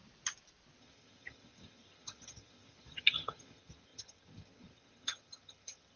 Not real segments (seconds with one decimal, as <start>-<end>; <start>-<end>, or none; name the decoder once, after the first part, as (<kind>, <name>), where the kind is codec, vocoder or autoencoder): 0.8-6.0 (vocoder, HiFi-GAN)